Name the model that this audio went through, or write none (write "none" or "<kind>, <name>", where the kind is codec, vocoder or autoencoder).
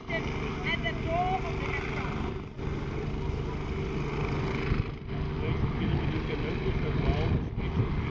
none